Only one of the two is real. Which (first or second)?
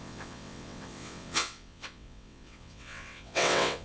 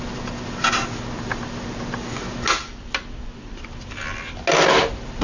second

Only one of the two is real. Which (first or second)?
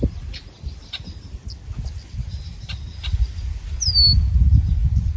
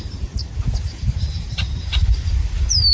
first